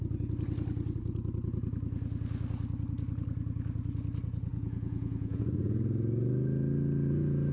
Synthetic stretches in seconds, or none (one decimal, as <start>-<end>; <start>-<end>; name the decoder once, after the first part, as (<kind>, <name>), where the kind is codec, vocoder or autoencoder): 4.5-5.4 (vocoder, Vocos)